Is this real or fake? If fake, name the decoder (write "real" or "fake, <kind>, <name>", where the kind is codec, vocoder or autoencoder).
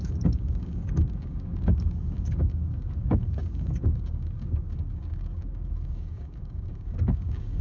fake, codec, DAC